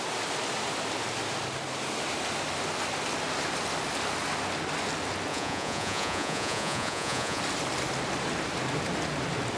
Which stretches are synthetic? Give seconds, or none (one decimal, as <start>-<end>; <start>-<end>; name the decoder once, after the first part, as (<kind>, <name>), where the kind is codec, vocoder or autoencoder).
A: 5.3-7.4 (vocoder, Vocos)